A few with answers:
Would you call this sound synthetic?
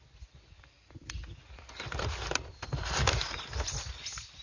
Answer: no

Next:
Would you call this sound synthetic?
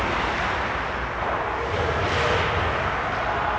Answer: no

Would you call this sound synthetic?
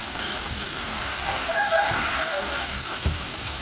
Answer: yes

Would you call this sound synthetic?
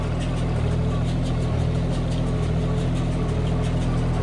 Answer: no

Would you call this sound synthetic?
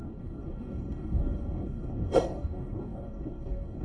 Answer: yes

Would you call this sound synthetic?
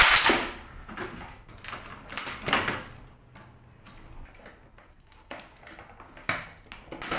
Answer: no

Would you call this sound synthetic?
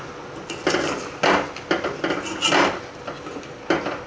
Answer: no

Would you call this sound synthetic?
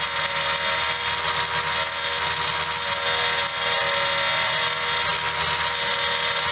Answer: no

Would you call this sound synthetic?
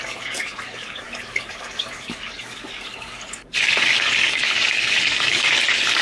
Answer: yes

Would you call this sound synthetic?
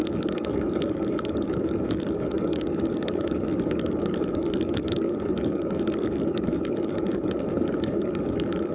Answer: yes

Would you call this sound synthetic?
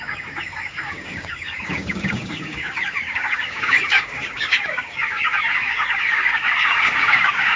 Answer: yes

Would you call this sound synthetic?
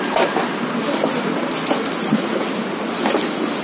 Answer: no